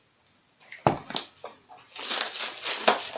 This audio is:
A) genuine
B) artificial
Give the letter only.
A